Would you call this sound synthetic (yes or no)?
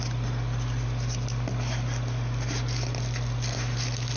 no